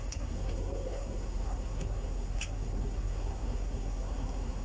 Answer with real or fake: fake